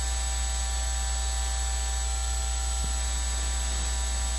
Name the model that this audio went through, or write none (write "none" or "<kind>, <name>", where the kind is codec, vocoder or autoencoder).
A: none